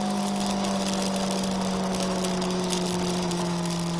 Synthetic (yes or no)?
no